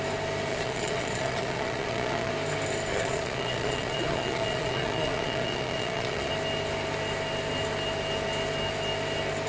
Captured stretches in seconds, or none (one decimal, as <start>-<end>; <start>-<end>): 0.0-0.5; 2.3-2.9; 6.3-9.5